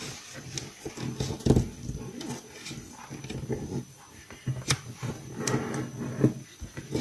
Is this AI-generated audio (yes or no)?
no